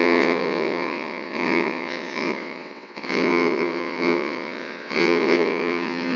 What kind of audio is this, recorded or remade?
remade